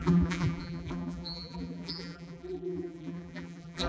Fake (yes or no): yes